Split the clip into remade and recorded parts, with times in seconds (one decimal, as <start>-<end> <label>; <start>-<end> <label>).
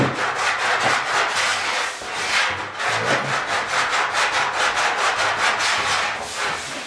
0.0-6.9 recorded